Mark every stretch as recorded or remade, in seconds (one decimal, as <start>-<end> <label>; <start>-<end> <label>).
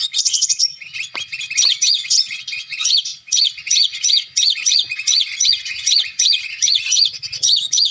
0.0-0.7 remade; 0.7-1.6 recorded; 1.6-7.9 remade